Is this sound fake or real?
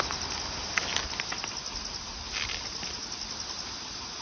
real